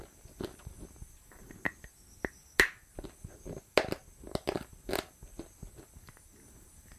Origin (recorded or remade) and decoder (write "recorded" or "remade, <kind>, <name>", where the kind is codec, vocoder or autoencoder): recorded